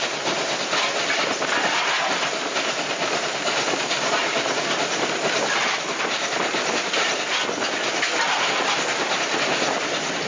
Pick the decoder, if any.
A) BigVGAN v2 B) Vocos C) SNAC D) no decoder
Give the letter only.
D